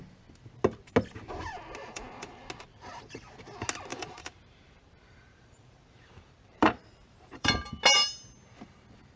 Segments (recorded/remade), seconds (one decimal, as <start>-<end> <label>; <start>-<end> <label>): 0.0-1.8 recorded; 1.8-2.4 remade; 2.4-3.9 recorded; 3.9-7.7 remade; 7.7-9.2 recorded